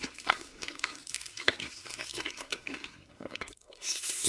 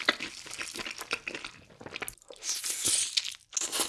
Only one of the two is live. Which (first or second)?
second